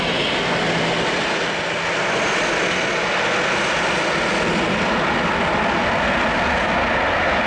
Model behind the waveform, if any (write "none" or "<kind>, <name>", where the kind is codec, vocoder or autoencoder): none